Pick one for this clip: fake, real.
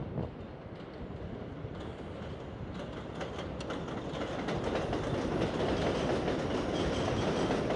real